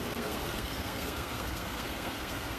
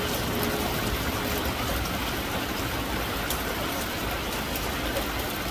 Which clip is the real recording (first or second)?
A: second